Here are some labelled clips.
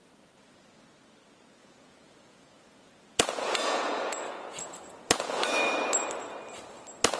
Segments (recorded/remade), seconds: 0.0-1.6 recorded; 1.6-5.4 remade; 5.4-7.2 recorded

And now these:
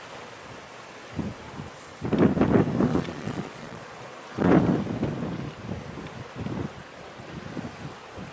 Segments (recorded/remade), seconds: 0.0-2.9 recorded; 2.9-4.5 remade; 4.5-8.3 recorded

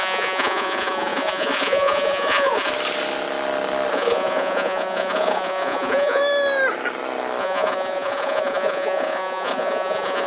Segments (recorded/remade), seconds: 0.0-2.7 remade; 2.7-3.9 recorded; 3.9-6.2 remade; 6.2-7.4 recorded; 7.4-10.3 remade

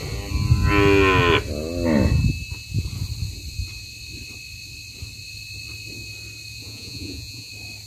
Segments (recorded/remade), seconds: 0.0-6.6 recorded; 6.6-7.5 remade; 7.5-7.9 recorded

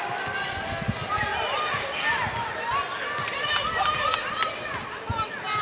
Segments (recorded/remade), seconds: 0.0-5.6 recorded

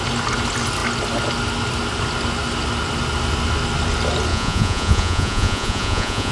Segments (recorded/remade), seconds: 0.0-4.3 recorded; 4.3-6.3 remade

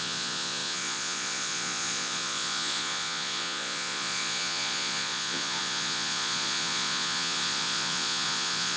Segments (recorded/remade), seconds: 0.0-8.8 remade

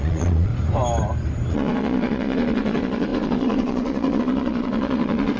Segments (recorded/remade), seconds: 0.0-0.5 remade; 0.5-1.5 recorded; 1.5-5.4 remade